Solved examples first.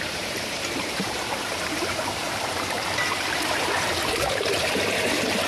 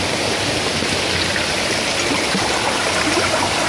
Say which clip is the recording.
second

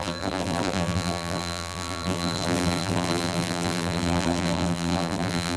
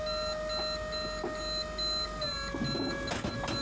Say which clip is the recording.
second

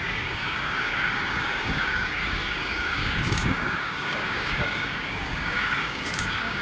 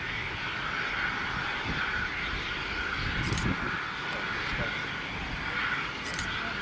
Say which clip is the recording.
second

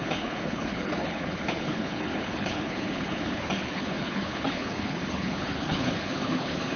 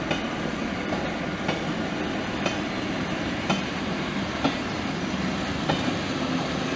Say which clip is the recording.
second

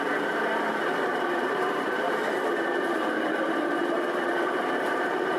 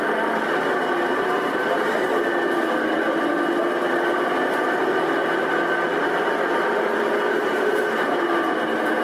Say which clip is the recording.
second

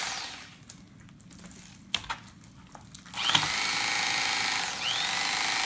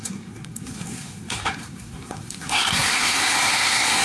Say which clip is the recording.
first